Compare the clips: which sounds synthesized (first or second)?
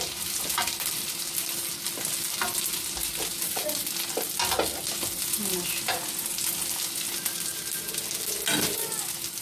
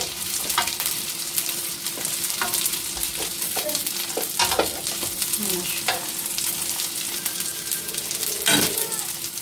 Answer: second